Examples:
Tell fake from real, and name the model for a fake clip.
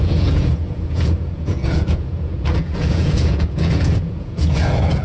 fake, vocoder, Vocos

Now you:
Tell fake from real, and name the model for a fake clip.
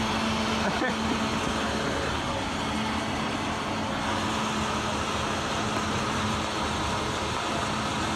real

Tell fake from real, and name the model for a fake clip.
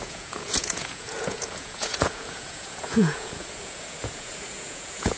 fake, vocoder, Vocos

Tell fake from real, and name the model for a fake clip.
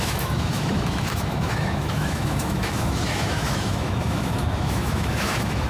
fake, autoencoder, DAC-VAE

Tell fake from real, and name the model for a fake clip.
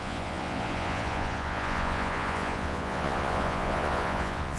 fake, vocoder, Vocos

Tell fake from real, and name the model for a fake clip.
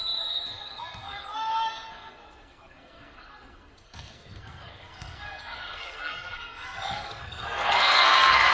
fake, codec, SNAC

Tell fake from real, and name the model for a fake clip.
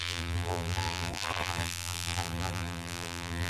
fake, vocoder, BigVGAN v2